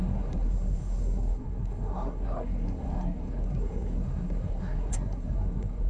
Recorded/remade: remade